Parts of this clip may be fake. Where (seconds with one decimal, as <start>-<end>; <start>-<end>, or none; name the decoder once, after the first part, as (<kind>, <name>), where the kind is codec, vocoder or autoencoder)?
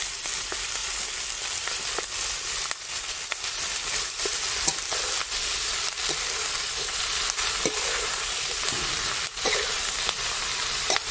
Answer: 0.0-0.8 (vocoder, BigVGAN v2); 1.7-11.1